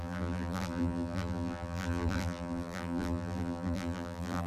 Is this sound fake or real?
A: fake